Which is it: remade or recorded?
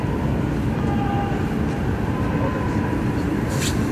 recorded